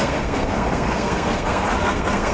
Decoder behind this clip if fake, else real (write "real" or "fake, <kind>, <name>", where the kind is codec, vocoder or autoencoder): fake, codec, SNAC